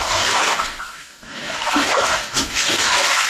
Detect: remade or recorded remade